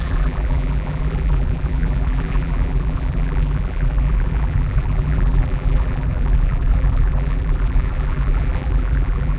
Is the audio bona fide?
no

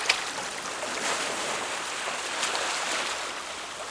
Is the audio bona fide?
yes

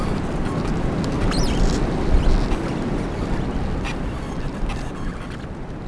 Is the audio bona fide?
yes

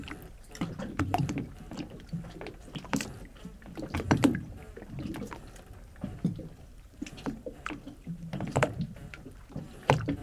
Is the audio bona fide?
no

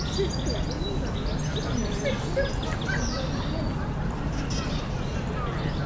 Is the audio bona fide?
yes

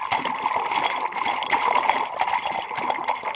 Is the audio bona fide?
yes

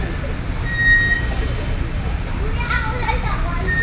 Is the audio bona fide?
yes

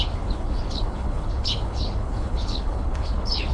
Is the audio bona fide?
no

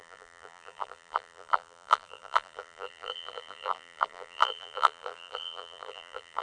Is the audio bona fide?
no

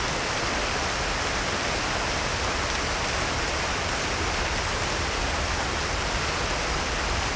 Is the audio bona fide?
yes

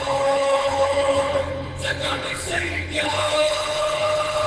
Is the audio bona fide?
no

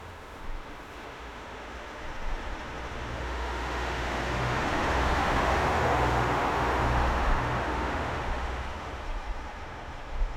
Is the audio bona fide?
no